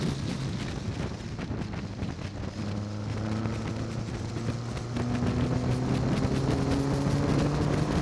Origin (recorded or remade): recorded